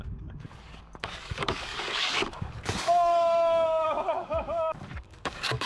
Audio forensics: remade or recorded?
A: remade